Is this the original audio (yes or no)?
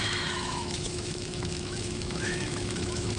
no